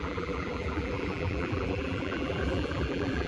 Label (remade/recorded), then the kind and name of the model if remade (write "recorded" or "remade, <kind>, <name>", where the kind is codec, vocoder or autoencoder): remade, vocoder, BigVGAN v2